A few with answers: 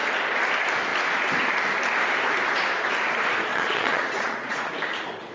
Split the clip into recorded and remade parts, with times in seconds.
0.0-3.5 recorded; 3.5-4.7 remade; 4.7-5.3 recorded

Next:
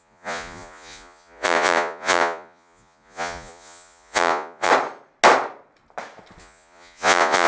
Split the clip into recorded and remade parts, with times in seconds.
0.0-4.7 remade; 4.7-6.4 recorded; 6.4-7.5 remade

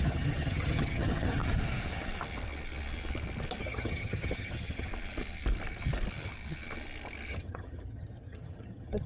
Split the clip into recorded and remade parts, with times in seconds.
0.0-1.4 remade; 1.4-3.6 recorded; 3.6-4.9 remade; 4.9-7.3 recorded; 7.3-9.1 remade

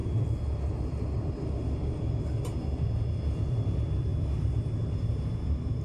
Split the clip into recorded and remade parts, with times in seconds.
0.0-3.5 recorded; 3.5-5.8 remade

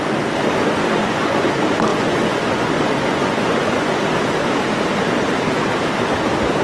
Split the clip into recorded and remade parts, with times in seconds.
0.0-1.0 recorded; 1.0-1.5 remade; 1.5-1.9 recorded; 1.9-2.7 remade; 2.7-3.1 recorded; 3.1-4.0 remade; 4.0-6.6 recorded